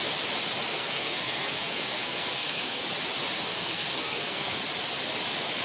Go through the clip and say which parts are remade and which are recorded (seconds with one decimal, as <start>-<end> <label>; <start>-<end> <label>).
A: 0.0-0.7 recorded; 0.7-2.8 remade; 2.8-3.5 recorded; 3.5-4.6 remade; 4.6-5.6 recorded